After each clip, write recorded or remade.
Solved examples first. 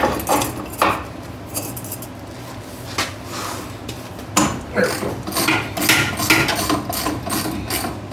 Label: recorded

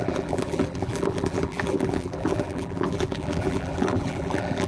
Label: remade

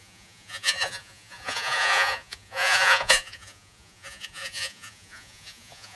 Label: remade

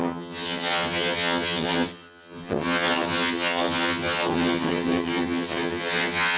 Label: remade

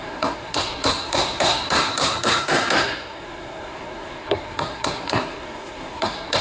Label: remade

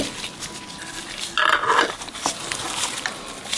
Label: recorded